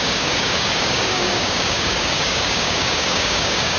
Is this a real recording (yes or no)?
no